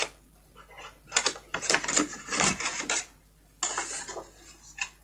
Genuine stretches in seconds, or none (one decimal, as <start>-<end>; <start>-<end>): 0.0-1.5; 4.5-5.0